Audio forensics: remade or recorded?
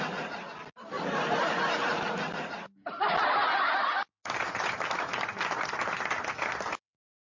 recorded